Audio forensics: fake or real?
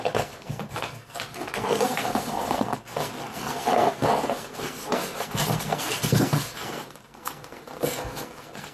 fake